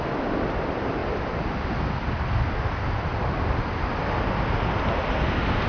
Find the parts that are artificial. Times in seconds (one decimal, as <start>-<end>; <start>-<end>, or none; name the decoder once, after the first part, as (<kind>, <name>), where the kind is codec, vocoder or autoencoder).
none